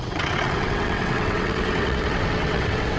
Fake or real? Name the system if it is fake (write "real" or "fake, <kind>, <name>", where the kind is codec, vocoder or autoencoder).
fake, vocoder, WaveNeXt